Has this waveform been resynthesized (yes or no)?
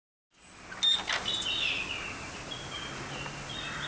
no